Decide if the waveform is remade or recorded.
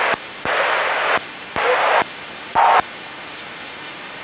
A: remade